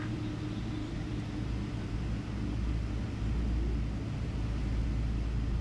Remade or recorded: recorded